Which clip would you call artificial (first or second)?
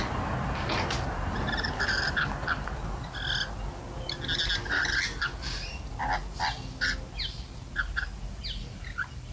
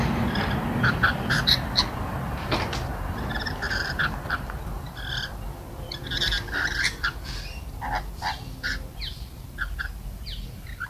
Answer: second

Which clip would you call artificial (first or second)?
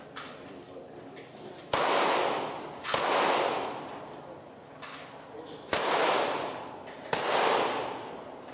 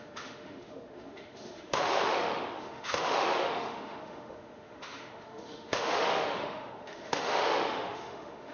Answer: second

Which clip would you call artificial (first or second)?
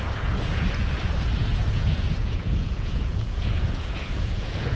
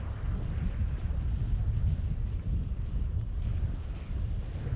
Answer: first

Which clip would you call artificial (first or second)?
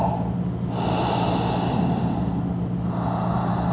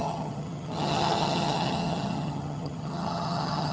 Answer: second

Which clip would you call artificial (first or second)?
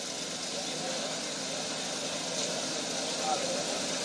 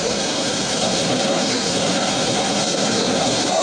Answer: second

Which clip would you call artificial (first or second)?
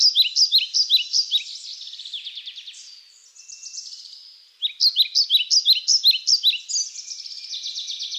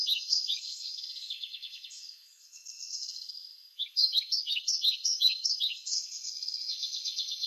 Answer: second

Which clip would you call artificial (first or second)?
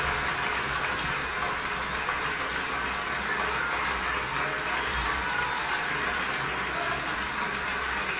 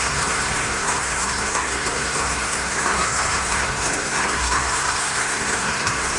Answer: second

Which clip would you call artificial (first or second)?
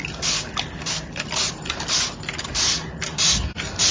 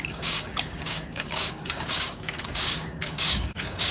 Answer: second